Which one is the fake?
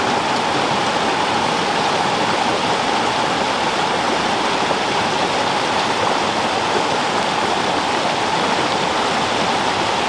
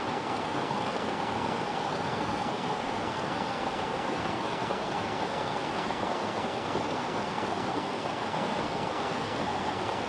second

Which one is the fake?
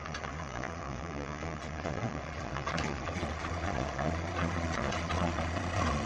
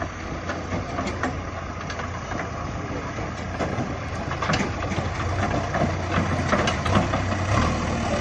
first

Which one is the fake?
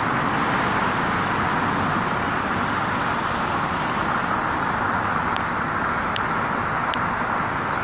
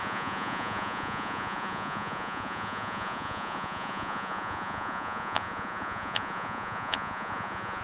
second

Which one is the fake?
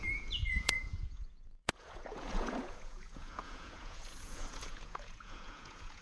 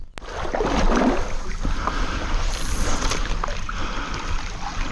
first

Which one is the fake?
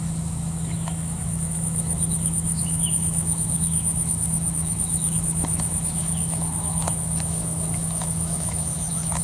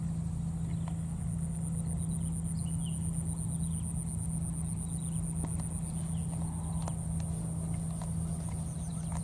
first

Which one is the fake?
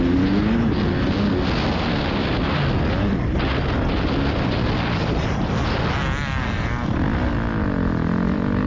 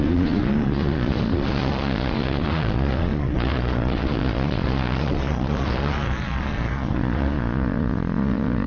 second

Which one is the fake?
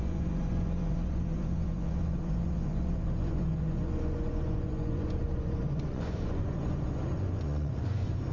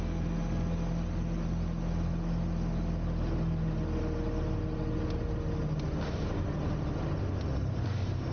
first